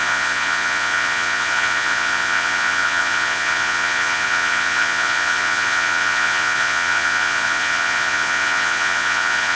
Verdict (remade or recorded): remade